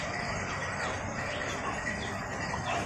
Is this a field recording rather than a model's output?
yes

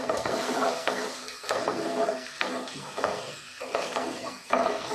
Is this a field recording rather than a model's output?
no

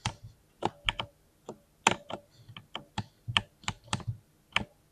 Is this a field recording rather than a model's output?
yes